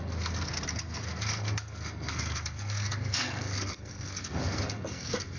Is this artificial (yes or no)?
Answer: yes